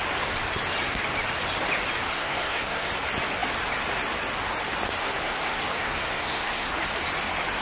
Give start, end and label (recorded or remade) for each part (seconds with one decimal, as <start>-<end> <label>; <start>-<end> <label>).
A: 0.0-2.1 recorded; 2.1-2.9 remade; 2.9-5.0 recorded; 5.0-6.7 remade; 6.7-7.6 recorded